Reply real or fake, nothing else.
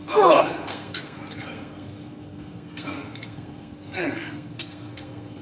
fake